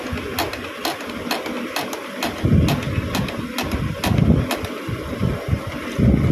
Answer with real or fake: real